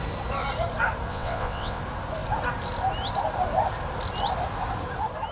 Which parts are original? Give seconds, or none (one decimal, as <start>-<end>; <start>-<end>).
0.0-1.1; 1.8-5.3